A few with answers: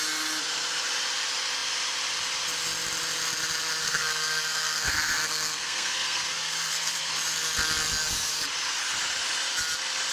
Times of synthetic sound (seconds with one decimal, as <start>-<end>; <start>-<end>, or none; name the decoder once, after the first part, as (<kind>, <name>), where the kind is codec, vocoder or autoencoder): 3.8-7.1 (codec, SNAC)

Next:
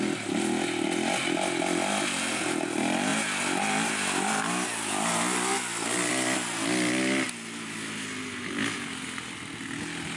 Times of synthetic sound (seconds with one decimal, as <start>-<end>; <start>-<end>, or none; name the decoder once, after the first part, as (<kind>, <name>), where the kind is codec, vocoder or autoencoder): none

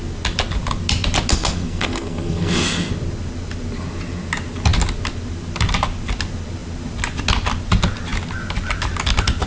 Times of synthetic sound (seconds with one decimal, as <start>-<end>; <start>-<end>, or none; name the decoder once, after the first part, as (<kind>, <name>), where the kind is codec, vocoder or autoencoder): 1.3-2.9 (codec, SNAC)

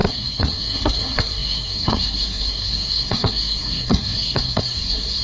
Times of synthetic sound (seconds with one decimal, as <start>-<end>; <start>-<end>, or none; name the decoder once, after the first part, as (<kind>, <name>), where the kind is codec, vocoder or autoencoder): 0.0-5.2 (codec, SNAC)